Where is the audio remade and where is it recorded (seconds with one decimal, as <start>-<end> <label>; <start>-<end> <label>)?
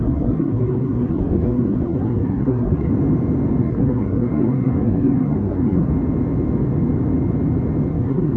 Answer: 0.0-2.9 remade; 2.9-3.6 recorded; 3.6-5.9 remade; 5.9-7.9 recorded; 7.9-8.4 remade